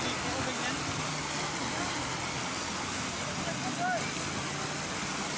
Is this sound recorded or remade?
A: recorded